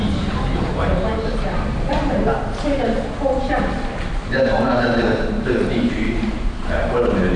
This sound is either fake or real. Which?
fake